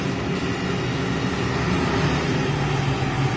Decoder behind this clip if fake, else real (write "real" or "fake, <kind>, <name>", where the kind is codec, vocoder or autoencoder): real